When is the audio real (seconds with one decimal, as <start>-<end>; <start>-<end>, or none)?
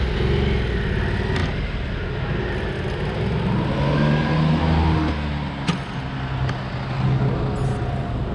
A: 0.0-8.3